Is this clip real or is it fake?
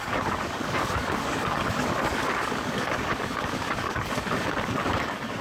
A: fake